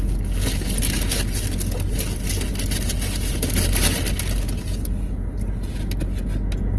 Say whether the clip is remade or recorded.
recorded